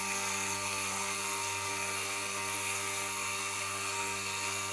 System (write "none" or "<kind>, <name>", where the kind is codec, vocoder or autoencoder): codec, SNAC